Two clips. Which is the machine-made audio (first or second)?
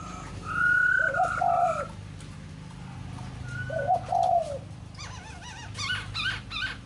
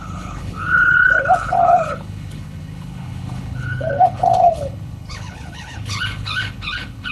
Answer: second